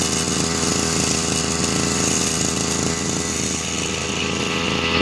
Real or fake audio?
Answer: real